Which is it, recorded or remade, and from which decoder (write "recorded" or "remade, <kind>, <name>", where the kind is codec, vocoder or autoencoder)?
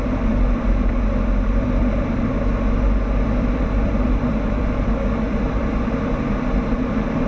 remade, vocoder, BigVGAN v2